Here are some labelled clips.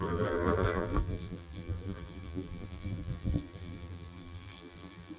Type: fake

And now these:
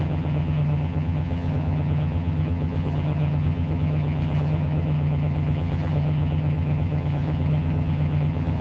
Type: fake